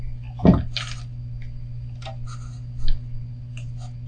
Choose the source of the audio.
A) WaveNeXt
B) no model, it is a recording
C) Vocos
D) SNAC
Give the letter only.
B